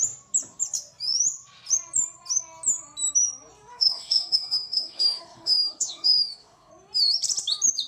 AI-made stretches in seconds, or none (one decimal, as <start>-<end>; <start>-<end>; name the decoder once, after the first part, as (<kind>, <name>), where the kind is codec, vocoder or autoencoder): 3.7-6.7 (autoencoder, DAC-VAE)